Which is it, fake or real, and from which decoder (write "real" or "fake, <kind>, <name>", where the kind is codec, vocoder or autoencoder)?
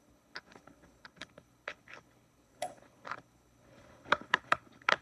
fake, codec, HILCodec